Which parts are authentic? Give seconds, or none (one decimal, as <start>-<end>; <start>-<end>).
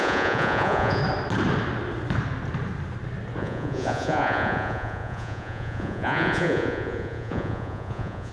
1.0-3.4